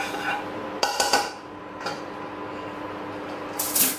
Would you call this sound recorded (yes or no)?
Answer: yes